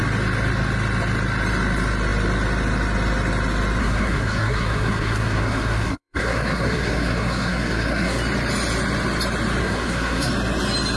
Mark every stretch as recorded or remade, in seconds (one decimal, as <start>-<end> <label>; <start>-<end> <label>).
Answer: 0.0-3.8 recorded; 3.8-8.2 remade; 8.2-9.6 recorded; 9.6-10.3 remade; 10.3-11.0 recorded